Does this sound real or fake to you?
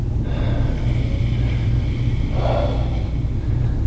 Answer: real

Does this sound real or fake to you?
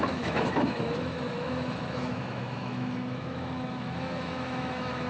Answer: fake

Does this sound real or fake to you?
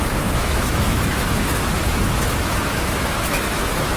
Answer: fake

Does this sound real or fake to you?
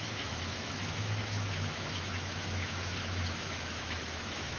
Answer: fake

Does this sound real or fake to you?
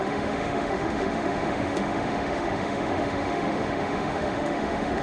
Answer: fake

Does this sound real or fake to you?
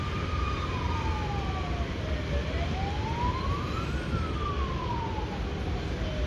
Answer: real